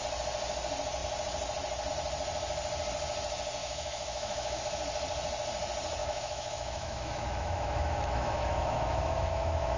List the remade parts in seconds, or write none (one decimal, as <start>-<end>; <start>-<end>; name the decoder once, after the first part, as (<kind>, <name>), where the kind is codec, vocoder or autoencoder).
3.6-4.6 (autoencoder, DAC-VAE); 6.0-9.8

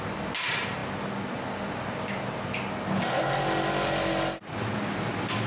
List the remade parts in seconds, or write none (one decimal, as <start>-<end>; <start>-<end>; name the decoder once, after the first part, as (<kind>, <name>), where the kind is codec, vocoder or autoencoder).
none

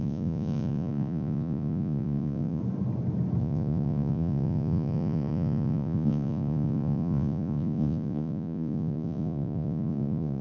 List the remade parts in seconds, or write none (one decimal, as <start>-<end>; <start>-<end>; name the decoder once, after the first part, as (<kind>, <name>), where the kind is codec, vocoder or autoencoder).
0.0-2.6 (vocoder, Vocos); 3.4-10.4

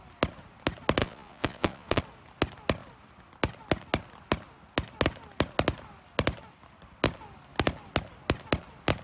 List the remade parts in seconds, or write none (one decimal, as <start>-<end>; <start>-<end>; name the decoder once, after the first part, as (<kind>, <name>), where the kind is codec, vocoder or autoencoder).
1.0-2.0 (vocoder, Vocos)

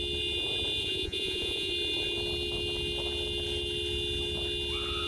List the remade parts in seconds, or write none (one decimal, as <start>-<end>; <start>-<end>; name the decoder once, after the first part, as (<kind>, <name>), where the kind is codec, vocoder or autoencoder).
0.8-1.7 (vocoder, Vocos)

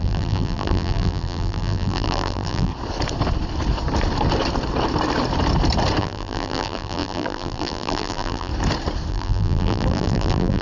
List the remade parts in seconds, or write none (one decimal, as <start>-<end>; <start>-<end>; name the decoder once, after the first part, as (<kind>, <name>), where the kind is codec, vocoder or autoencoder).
0.0-2.7 (vocoder, BigVGAN v2); 6.0-8.5; 9.1-10.6

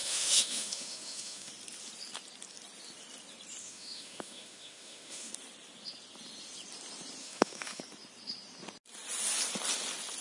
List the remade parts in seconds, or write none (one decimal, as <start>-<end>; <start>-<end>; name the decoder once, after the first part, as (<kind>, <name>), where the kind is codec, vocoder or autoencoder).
0.0-1.5 (autoencoder, DAC-VAE); 3.6-5.3; 7.2-7.8

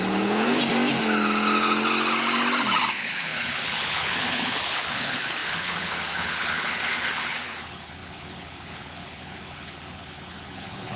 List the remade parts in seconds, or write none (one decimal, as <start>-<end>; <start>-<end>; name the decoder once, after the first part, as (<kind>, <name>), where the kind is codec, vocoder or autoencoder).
0.0-0.6 (codec, HILCodec); 2.9-11.0